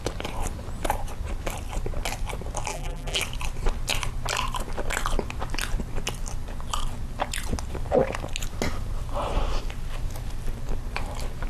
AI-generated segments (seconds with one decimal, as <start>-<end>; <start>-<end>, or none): 2.7-3.2